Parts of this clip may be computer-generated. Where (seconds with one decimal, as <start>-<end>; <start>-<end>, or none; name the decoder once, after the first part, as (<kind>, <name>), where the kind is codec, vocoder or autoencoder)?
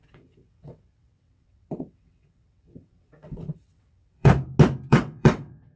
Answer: 0.0-4.3 (vocoder, WaveNeXt); 4.9-5.8